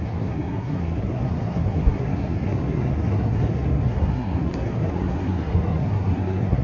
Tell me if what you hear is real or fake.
fake